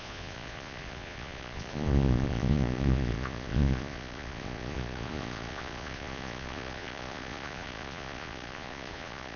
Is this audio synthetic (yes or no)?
yes